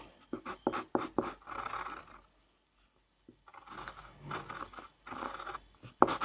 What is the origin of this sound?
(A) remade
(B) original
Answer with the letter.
B